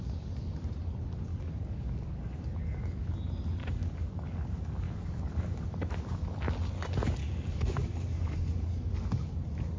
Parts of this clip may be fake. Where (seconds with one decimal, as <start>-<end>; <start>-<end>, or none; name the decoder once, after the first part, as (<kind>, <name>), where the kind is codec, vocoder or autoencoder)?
1.3-3.1 (codec, DAC); 3.6-5.9; 7.2-8.9